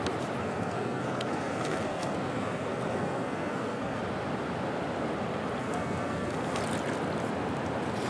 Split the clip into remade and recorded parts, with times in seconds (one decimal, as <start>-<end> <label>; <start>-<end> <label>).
0.0-0.4 recorded; 0.4-4.0 remade; 4.0-5.6 recorded; 5.6-6.6 remade; 6.6-8.1 recorded